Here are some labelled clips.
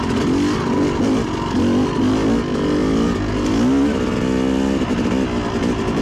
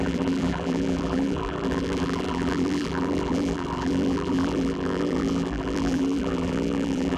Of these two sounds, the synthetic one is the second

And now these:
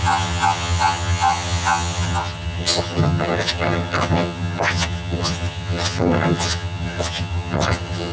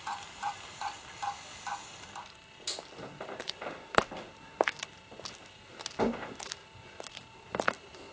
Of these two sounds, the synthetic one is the first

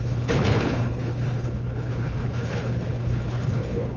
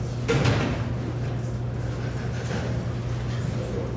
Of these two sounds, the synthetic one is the first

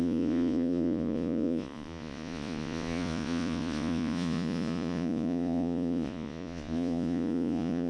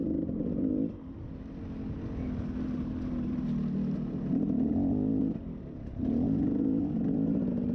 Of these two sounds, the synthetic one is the first